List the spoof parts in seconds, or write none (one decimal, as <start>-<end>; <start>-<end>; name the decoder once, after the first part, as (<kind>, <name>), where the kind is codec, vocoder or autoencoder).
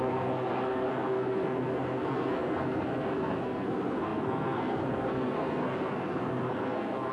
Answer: 0.0-7.1 (codec, SNAC)